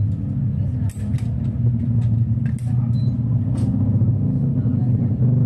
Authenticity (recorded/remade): recorded